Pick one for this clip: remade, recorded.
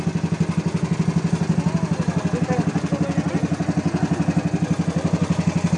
recorded